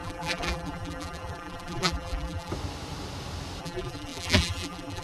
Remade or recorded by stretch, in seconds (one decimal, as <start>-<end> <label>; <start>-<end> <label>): 0.0-2.5 remade; 2.5-3.6 recorded; 3.6-5.0 remade